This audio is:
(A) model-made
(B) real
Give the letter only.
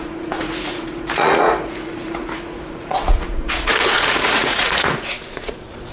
A